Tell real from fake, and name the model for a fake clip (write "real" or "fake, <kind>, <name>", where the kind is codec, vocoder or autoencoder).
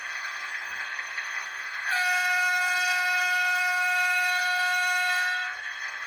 fake, codec, SNAC